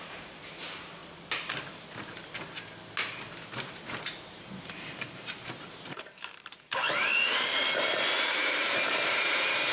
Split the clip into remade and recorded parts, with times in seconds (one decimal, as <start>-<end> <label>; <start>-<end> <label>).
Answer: 0.0-1.0 remade; 1.0-3.5 recorded; 3.5-9.7 remade